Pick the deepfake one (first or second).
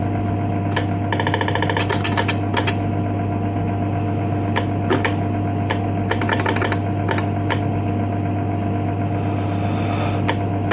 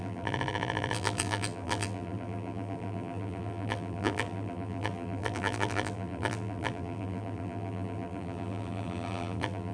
second